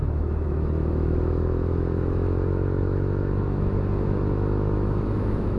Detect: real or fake fake